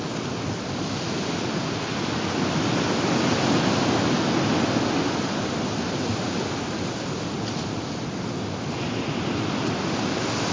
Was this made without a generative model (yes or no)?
yes